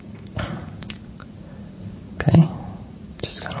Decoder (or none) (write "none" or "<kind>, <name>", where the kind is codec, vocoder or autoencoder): vocoder, Vocos